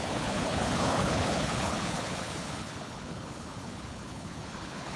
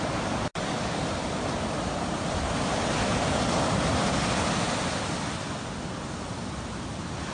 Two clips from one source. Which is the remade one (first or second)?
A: first